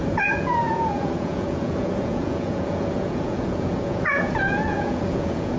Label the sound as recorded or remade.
remade